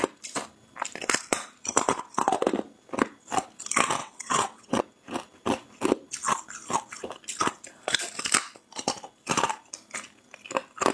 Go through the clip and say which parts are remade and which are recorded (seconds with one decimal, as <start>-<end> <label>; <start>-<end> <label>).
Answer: 0.0-4.0 recorded; 4.0-4.8 remade; 4.8-10.9 recorded